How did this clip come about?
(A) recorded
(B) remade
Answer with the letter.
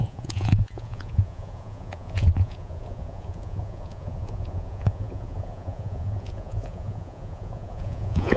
B